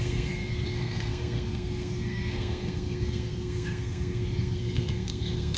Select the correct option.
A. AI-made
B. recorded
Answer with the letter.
A